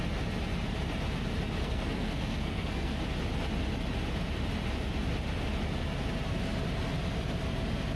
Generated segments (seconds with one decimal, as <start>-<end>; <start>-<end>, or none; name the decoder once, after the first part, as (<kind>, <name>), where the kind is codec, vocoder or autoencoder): 1.6-3.0 (codec, SNAC)